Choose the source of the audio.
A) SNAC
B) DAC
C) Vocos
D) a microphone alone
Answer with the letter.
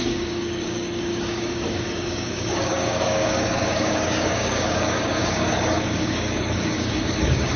B